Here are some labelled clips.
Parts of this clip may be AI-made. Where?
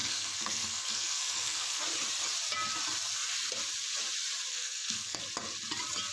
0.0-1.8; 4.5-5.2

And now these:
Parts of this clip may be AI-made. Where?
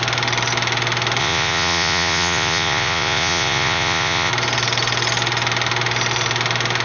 1.2-4.3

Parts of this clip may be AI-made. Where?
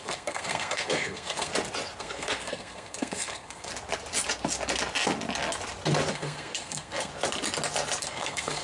0.0-1.5; 2.0-3.7; 6.1-7.1; 8.0-8.6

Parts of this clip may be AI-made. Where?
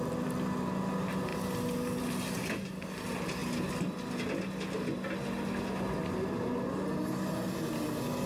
none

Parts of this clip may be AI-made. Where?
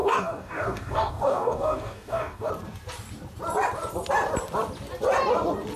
0.0-2.5